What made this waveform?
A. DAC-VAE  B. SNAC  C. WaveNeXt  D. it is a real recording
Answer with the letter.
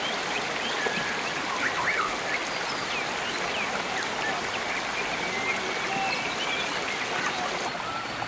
D